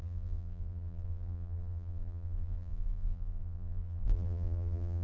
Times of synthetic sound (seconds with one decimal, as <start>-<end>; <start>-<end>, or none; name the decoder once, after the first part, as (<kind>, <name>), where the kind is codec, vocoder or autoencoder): 0.0-5.0 (vocoder, BigVGAN v2)